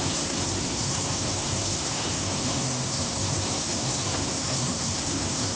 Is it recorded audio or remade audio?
remade